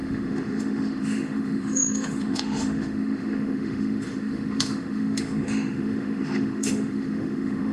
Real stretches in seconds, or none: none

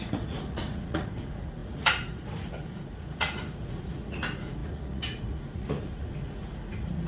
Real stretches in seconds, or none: none